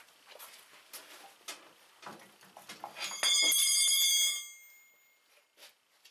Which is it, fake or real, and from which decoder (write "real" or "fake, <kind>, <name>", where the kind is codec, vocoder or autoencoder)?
real